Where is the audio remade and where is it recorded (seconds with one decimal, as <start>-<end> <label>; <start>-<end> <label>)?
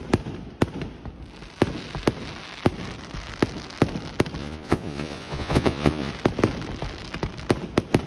0.0-4.4 recorded; 4.4-6.1 remade; 6.1-8.1 recorded